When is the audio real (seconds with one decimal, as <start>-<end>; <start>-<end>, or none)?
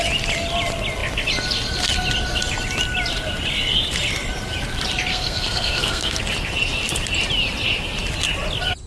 0.0-5.1; 6.2-8.9